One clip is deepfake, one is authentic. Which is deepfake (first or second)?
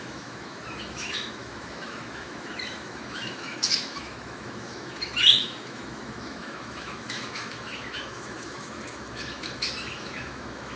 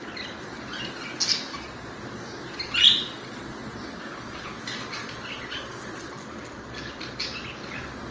first